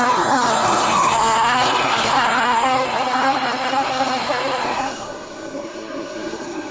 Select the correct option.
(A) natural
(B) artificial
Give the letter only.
B